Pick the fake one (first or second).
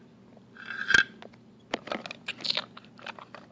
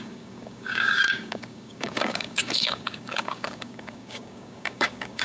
second